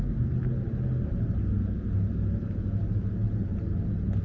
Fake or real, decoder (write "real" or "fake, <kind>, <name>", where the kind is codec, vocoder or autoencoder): real